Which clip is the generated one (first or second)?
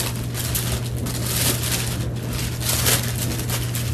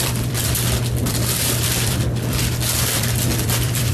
second